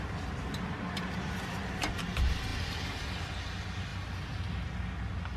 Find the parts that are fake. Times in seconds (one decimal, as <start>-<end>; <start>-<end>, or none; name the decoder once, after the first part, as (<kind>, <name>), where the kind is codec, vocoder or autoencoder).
none